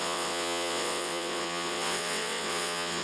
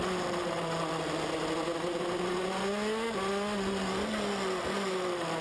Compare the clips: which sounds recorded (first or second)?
second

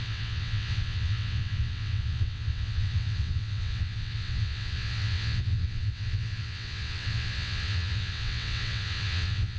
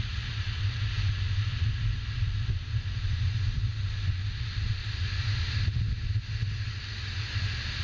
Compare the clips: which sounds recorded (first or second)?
second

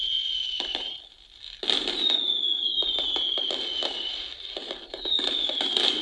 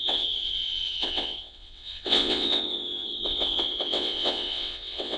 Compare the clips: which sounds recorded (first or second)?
first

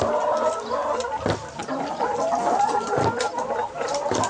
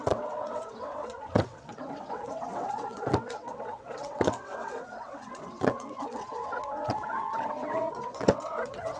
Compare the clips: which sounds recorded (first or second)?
first